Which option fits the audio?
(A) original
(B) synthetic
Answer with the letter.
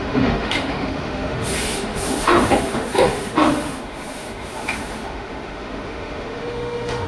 B